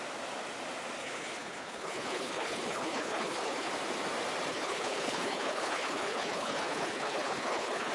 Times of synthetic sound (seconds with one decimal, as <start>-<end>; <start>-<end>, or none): 1.0-3.7; 4.5-7.9